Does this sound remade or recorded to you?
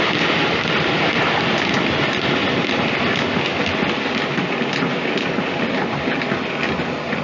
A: recorded